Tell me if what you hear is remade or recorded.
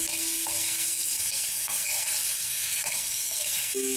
remade